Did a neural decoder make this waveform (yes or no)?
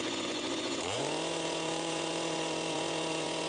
yes